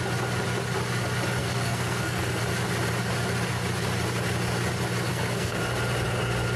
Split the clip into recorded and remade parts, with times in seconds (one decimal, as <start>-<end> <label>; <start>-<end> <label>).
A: 0.0-1.4 recorded; 1.4-2.4 remade; 2.4-5.1 recorded; 5.1-5.6 remade; 5.6-6.6 recorded